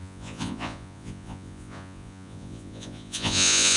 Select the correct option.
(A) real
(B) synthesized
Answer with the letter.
B